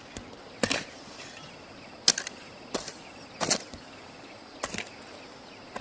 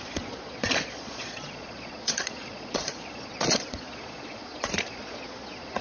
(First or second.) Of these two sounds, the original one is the first